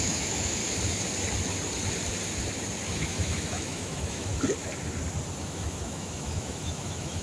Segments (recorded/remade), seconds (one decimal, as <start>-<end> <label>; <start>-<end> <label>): 0.0-0.6 remade; 0.6-2.9 recorded; 2.9-4.3 remade; 4.3-5.4 recorded; 5.4-7.2 remade